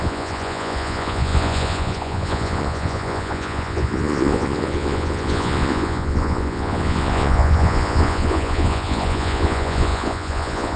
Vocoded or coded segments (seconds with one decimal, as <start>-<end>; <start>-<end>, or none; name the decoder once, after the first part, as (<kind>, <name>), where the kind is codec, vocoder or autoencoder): 0.0-10.8 (vocoder, Vocos)